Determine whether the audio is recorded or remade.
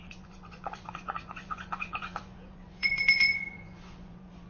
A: remade